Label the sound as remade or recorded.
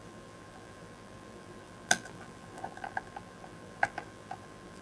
remade